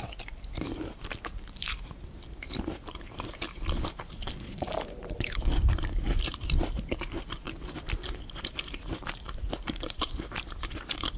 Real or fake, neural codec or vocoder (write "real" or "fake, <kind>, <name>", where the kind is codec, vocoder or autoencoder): fake, vocoder, BigVGAN v2